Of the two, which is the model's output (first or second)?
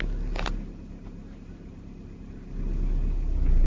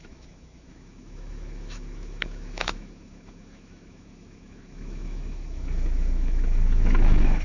second